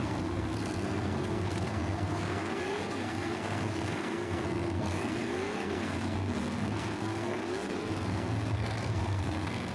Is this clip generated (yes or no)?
yes